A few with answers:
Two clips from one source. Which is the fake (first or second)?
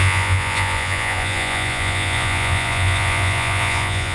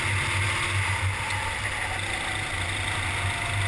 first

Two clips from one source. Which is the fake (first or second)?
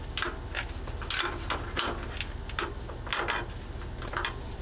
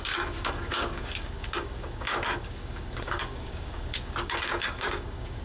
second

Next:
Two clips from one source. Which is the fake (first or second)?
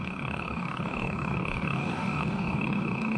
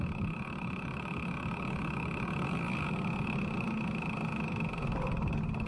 first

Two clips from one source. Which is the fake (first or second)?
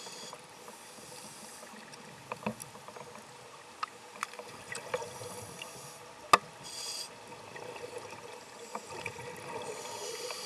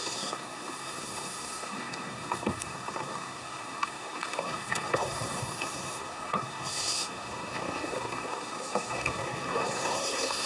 second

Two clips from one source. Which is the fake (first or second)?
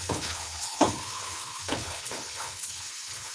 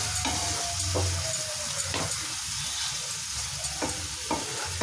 first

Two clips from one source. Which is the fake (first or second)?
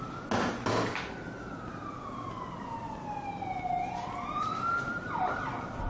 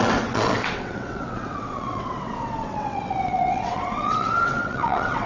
second